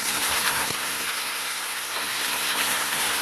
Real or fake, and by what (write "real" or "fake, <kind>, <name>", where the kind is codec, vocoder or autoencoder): fake, codec, SNAC